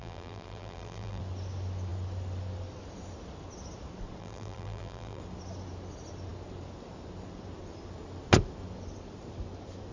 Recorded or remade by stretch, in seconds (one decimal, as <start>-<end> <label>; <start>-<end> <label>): 0.0-1.2 remade; 1.2-4.2 recorded; 4.2-5.2 remade; 5.2-9.9 recorded

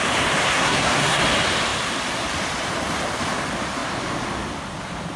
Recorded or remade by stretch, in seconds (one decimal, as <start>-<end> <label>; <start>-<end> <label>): 0.0-0.4 recorded; 0.4-1.2 remade; 1.2-5.2 recorded

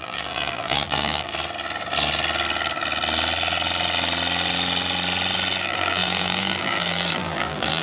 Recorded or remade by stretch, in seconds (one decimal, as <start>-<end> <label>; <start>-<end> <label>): 0.0-1.3 remade; 1.3-5.6 recorded; 5.6-7.8 remade